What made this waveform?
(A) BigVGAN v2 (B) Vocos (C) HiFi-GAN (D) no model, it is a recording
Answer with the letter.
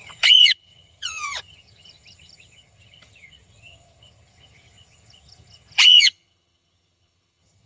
C